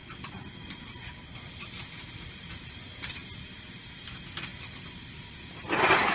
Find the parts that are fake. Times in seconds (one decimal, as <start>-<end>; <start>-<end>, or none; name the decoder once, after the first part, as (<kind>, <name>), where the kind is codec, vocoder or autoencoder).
3.0-6.1 (vocoder, BigVGAN v2)